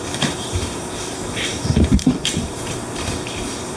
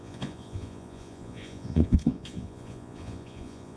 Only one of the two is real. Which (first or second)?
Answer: first